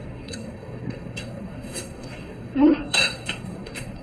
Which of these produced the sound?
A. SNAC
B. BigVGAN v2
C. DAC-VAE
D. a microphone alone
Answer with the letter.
A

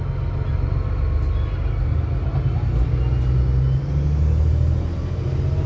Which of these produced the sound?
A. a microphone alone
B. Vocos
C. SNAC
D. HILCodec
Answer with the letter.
A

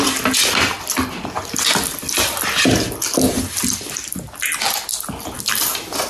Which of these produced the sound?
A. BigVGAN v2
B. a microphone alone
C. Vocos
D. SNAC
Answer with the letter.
B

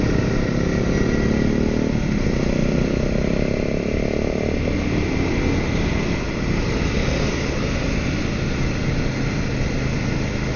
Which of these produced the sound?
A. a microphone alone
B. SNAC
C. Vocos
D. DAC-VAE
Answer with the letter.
A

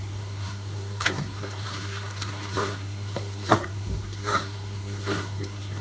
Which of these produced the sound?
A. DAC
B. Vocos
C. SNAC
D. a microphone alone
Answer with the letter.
C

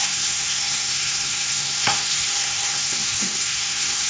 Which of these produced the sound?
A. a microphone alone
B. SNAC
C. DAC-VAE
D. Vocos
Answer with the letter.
B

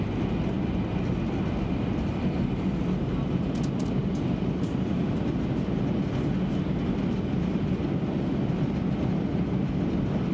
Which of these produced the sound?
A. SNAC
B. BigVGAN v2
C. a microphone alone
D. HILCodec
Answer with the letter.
C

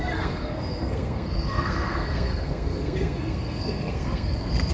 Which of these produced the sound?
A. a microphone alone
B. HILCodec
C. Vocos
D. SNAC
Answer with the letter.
D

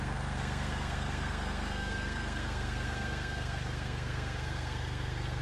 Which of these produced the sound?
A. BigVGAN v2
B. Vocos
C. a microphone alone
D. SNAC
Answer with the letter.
D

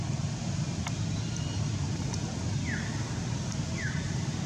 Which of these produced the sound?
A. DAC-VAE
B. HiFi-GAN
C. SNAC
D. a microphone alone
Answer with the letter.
D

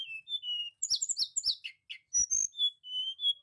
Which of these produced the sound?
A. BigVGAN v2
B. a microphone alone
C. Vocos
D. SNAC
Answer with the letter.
B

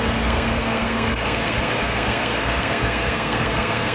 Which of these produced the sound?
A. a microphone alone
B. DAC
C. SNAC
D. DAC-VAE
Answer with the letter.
C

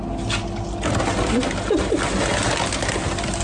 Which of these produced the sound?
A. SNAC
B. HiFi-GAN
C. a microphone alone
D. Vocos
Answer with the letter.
C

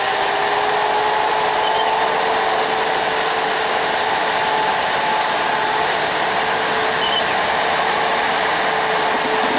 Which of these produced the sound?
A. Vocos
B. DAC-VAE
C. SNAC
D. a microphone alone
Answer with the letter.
D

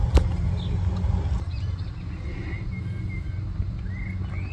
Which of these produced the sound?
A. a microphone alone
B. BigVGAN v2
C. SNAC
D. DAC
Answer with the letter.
A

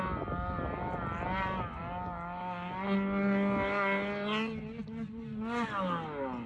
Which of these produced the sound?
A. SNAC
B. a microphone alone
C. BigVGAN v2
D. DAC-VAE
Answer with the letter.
B